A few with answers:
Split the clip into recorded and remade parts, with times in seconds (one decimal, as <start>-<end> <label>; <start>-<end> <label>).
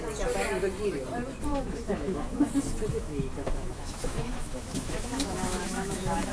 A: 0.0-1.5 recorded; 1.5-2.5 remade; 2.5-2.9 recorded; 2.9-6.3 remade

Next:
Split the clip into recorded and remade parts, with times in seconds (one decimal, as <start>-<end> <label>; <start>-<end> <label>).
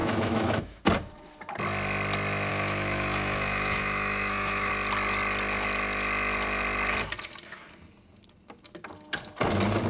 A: 0.0-0.8 remade; 0.8-2.5 recorded; 2.5-4.7 remade; 4.7-9.9 recorded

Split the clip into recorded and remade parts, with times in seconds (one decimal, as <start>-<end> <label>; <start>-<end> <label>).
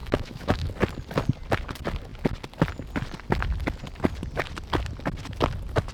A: 0.0-0.7 remade; 0.7-5.9 recorded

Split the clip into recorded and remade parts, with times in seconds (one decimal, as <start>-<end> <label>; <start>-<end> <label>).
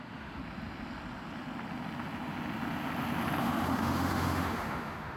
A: 0.0-0.4 remade; 0.4-3.4 recorded; 3.4-5.2 remade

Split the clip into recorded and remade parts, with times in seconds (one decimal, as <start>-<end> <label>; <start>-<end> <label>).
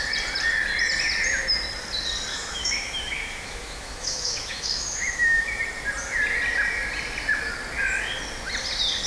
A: 0.0-2.3 recorded; 2.3-5.6 remade; 5.6-9.1 recorded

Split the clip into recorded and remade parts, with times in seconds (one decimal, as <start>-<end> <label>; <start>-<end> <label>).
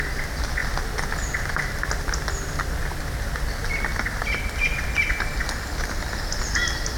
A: 0.0-7.0 recorded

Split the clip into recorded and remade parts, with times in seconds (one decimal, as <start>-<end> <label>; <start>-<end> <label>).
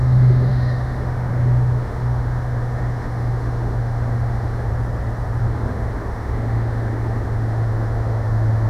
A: 0.0-4.7 remade; 4.7-5.4 recorded; 5.4-8.7 remade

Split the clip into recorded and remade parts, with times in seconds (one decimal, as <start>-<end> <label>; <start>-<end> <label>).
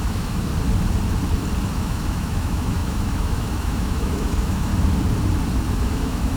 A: 0.0-0.5 remade; 0.5-1.6 recorded; 1.6-4.7 remade; 4.7-5.7 recorded; 5.7-6.4 remade